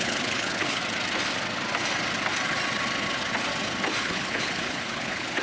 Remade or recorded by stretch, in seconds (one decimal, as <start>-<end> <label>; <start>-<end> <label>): 0.0-0.8 remade; 0.8-4.0 recorded; 4.0-5.4 remade